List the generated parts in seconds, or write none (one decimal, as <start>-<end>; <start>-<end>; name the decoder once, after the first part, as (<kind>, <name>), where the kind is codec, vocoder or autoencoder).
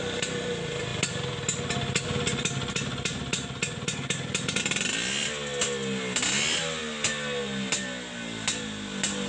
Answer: none